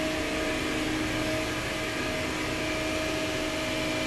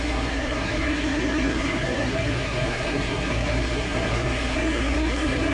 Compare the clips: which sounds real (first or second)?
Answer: first